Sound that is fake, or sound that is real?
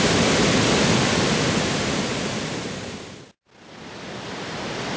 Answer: real